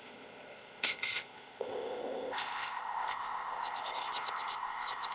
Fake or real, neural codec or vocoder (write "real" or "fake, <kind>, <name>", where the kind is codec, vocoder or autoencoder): fake, codec, ZipCodec